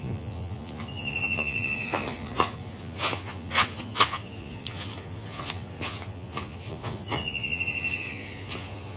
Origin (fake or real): fake